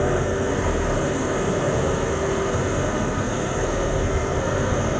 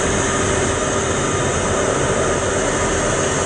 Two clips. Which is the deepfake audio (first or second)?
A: first